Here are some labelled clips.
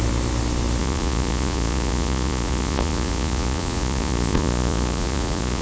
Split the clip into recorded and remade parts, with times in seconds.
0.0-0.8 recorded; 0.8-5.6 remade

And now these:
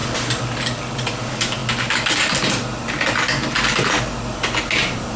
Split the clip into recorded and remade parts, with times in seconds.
0.0-5.2 recorded

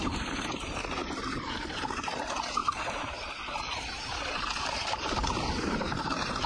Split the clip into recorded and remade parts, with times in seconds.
0.0-1.0 recorded; 1.0-2.1 remade; 2.1-2.6 recorded; 2.6-6.5 remade

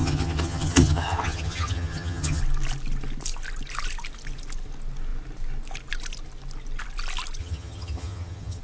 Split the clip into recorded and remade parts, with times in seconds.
0.0-2.4 remade; 2.4-7.4 recorded; 7.4-8.6 remade

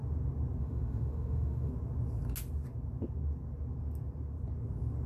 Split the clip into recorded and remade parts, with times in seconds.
0.0-0.6 recorded; 0.6-1.7 remade; 1.7-5.1 recorded

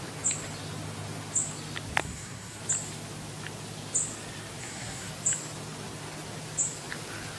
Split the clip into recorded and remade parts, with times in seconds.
0.0-2.0 recorded; 2.0-2.6 remade; 2.6-4.6 recorded; 4.6-5.1 remade; 5.1-7.4 recorded